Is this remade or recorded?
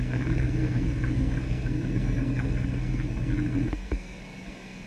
remade